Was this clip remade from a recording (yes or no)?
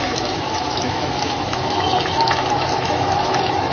yes